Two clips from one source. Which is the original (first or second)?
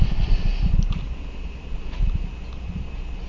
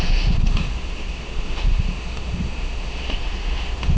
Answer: first